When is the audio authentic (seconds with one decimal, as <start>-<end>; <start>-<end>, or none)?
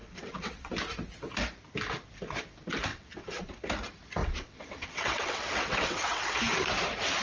0.7-2.9; 3.5-4.2; 6.5-7.2